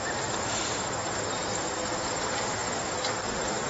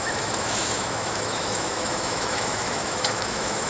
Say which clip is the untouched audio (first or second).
first